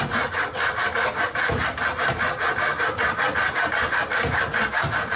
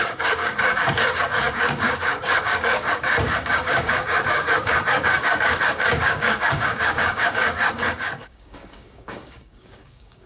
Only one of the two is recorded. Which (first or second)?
first